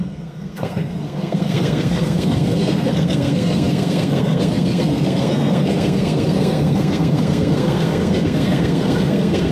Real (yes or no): no